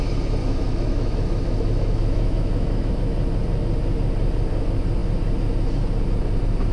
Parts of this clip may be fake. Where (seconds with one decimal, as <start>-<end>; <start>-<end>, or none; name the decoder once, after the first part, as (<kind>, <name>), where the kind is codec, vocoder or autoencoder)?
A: 0.4-2.9 (autoencoder, DAC-VAE)